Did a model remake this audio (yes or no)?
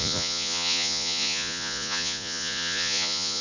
yes